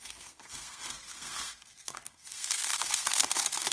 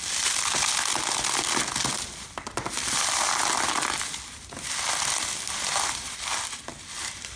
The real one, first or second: second